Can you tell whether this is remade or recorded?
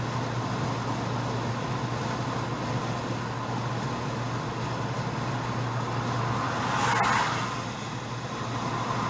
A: recorded